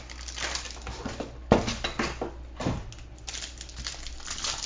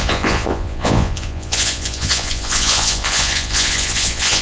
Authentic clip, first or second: first